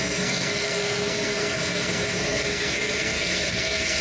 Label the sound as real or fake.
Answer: fake